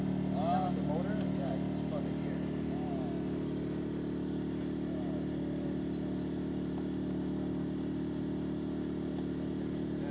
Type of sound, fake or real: real